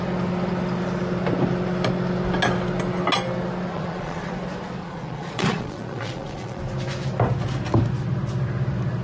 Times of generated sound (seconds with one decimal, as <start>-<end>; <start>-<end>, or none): 3.7-4.3; 4.8-6.6